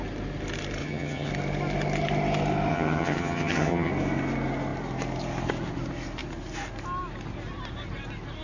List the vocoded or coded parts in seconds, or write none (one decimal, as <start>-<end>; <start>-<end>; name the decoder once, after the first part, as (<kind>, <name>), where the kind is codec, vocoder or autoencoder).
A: 0.8-1.3 (vocoder, HiFi-GAN); 2.7-3.9